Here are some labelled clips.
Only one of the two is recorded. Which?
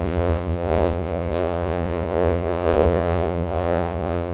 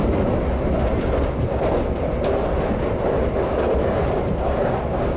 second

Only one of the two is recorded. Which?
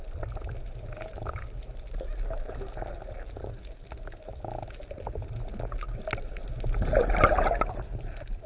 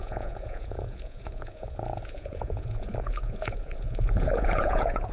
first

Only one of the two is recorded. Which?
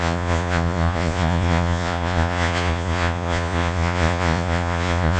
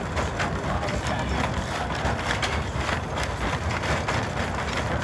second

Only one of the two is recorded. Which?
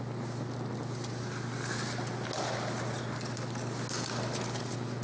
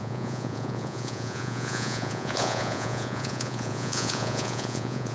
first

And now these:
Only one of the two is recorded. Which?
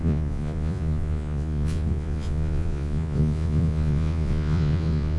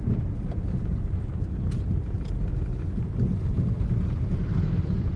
second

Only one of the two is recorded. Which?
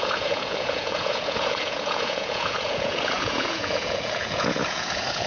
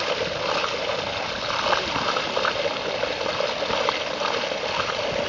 second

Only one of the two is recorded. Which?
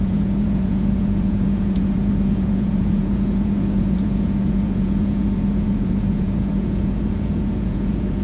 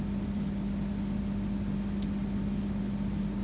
second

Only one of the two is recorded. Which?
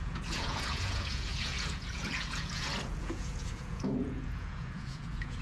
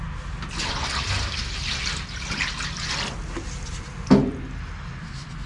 second